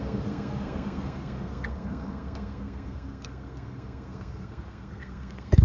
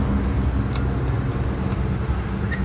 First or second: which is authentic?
second